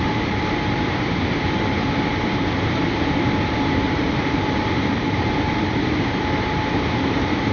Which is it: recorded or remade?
remade